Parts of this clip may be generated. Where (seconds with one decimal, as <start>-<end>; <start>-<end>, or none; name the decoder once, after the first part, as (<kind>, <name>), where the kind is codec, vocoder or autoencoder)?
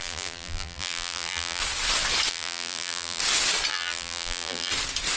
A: 0.0-1.6 (vocoder, BigVGAN v2); 2.3-3.2; 3.7-4.7